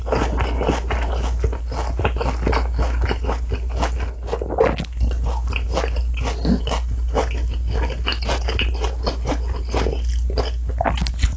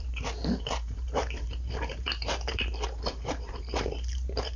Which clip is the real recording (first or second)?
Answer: first